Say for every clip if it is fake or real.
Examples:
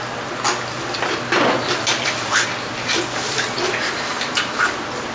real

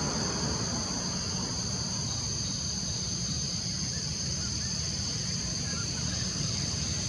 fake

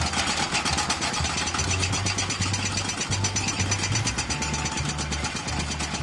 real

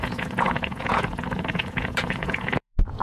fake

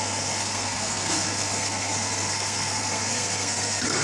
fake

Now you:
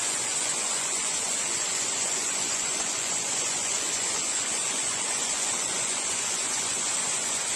fake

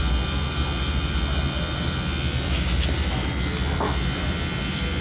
real